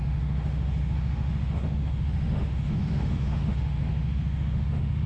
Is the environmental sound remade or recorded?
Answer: remade